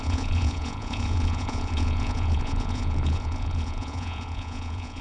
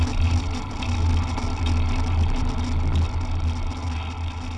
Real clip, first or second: second